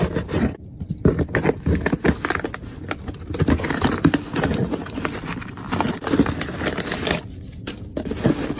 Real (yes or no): yes